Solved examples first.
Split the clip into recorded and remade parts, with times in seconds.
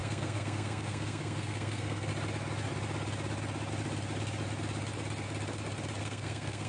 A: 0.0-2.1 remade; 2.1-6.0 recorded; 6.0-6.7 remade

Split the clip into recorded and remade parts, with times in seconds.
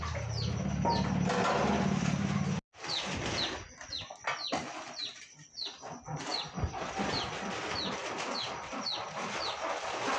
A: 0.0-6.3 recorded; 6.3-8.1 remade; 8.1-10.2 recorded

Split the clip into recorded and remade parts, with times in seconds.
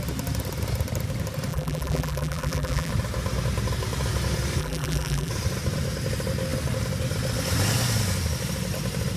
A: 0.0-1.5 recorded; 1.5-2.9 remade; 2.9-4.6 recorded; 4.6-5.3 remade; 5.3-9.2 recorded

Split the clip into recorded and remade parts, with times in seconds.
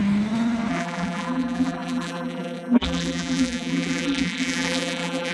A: 0.0-0.7 recorded; 0.7-5.3 remade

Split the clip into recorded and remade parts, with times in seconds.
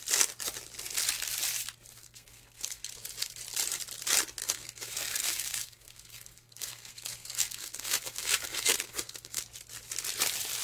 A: 0.0-2.0 recorded; 2.0-2.9 remade; 2.9-4.4 recorded; 4.4-9.4 remade; 9.4-10.6 recorded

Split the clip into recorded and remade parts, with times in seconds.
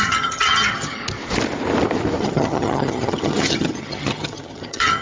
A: 0.0-1.0 remade; 1.0-2.2 recorded; 2.2-5.0 remade